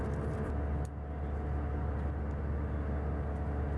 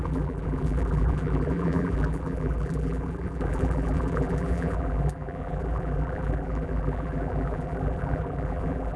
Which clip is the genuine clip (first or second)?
first